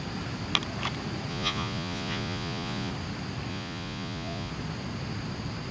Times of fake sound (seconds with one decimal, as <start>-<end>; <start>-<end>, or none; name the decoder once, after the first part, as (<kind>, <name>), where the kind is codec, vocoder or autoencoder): 1.3-2.9 (vocoder, Vocos); 3.5-4.5